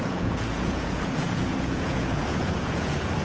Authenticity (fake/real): fake